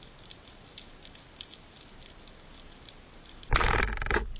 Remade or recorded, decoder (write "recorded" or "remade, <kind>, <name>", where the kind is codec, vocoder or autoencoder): recorded